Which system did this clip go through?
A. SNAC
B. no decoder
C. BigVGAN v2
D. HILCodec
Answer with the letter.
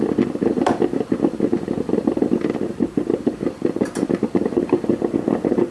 C